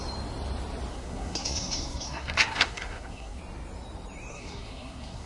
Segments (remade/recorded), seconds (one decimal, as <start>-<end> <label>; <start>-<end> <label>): 0.0-0.9 recorded; 0.9-3.4 remade; 3.4-4.3 recorded; 4.3-5.3 remade